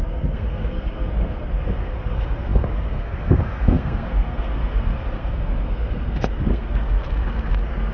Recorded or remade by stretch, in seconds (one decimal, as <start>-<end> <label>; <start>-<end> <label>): 0.0-7.9 remade